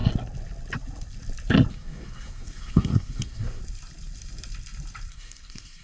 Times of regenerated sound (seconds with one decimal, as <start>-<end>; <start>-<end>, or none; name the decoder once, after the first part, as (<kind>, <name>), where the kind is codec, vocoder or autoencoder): 1.7-3.6 (codec, SNAC); 5.1-5.8